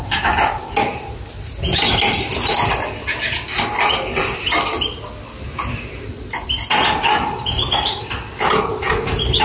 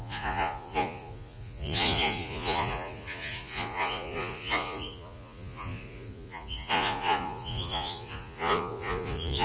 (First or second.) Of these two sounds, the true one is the first